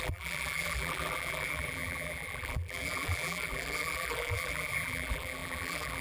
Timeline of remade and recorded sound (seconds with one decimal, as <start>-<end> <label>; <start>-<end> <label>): 0.0-6.0 remade